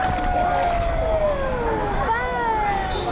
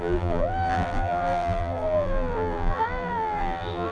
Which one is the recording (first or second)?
first